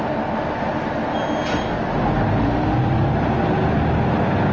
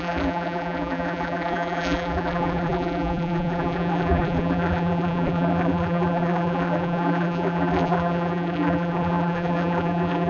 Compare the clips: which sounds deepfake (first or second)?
second